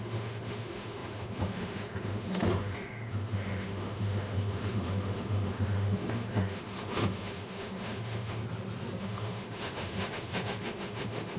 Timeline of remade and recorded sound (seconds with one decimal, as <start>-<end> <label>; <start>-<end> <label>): 0.0-8.4 remade; 8.4-9.0 recorded; 9.0-11.4 remade